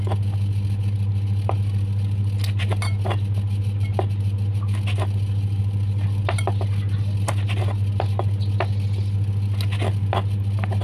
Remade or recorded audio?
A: recorded